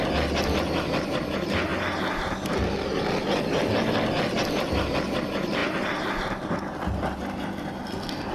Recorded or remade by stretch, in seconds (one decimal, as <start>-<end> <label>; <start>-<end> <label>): 0.0-8.3 recorded

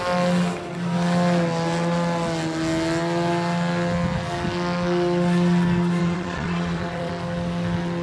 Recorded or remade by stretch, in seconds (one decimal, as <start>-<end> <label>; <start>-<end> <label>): 0.0-6.0 recorded; 6.0-7.1 remade; 7.1-8.0 recorded

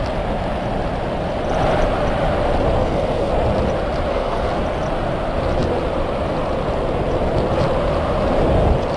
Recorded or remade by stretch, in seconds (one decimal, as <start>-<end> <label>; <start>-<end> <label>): 0.0-2.8 recorded; 2.8-3.3 remade; 3.3-4.1 recorded; 4.1-4.6 remade; 4.6-9.0 recorded

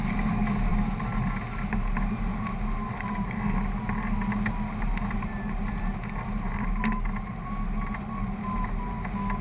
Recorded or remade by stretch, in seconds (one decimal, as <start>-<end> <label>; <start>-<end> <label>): 0.0-9.4 recorded